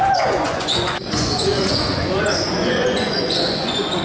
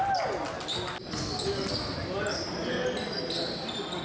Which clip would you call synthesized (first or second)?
first